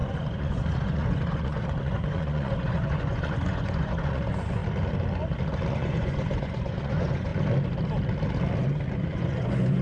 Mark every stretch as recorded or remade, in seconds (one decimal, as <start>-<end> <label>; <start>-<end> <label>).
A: 0.0-4.6 remade; 4.6-5.7 recorded; 5.7-7.3 remade; 7.3-8.9 recorded; 8.9-9.8 remade